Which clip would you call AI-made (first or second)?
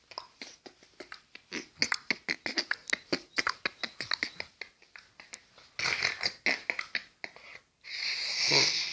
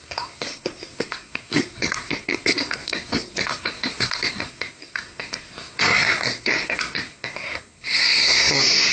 second